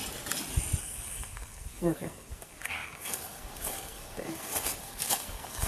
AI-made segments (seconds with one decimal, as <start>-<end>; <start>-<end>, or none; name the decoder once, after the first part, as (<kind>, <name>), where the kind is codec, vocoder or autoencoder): 0.8-5.7 (codec, SNAC)